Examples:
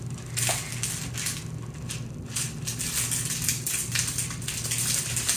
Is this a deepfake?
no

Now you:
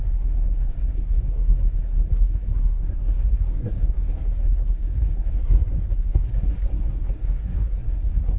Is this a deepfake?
yes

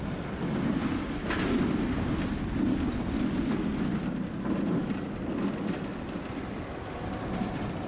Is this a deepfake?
no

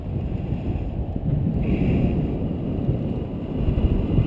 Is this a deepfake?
no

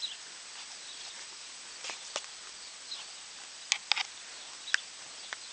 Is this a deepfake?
no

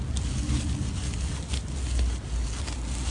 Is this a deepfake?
no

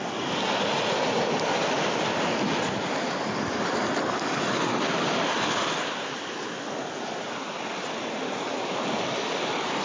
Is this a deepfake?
no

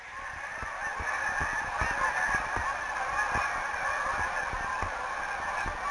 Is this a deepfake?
no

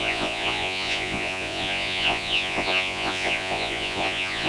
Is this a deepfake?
yes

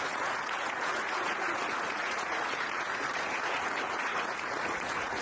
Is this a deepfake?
yes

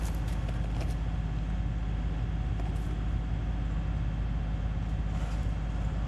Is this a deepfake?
no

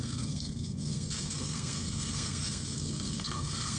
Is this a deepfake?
yes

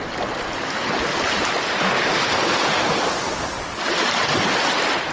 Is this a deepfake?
no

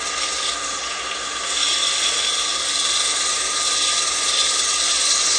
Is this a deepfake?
no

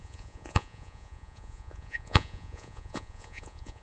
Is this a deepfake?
yes